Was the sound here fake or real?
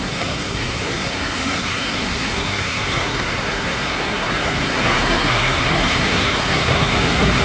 fake